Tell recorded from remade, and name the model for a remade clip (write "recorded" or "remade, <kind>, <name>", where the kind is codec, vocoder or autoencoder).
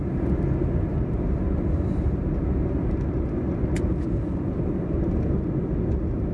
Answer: recorded